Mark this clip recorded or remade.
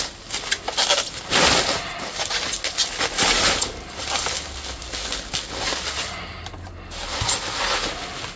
recorded